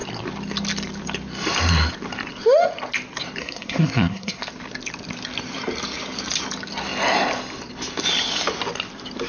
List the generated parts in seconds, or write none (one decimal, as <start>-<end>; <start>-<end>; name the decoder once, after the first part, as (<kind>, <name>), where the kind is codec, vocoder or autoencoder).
3.4-4.4 (codec, SNAC)